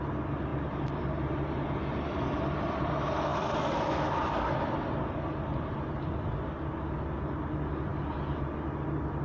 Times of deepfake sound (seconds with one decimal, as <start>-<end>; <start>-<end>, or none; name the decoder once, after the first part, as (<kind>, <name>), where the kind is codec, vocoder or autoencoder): 0.5-2.9 (vocoder, BigVGAN v2); 3.3-5.2